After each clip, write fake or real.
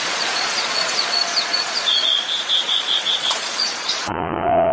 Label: fake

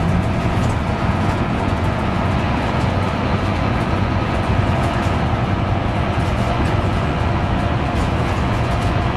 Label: fake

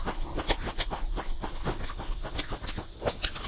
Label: real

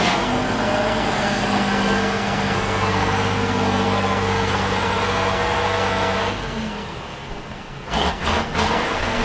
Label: fake